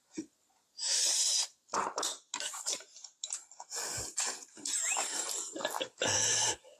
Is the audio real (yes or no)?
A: yes